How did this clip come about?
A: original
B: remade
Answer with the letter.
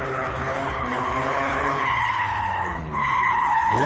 B